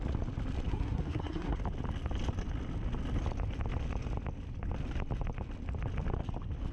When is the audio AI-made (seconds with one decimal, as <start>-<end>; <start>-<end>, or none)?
0.7-1.6